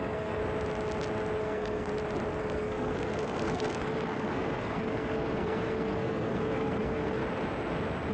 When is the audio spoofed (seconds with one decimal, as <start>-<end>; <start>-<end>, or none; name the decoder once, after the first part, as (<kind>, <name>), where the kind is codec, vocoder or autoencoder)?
0.0-0.4 (codec, SNAC); 1.4-1.9; 2.4-7.2